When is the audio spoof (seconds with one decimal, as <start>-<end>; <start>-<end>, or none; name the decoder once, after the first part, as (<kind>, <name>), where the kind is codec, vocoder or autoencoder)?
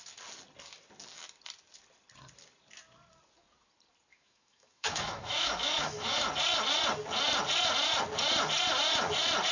4.1-6.2 (autoencoder, DAC-VAE)